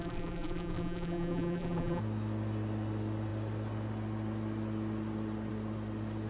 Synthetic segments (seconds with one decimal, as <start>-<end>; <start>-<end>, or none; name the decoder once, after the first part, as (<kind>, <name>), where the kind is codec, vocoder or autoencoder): 0.0-2.0 (vocoder, BigVGAN v2)